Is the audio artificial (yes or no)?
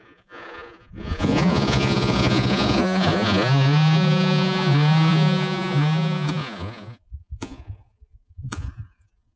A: yes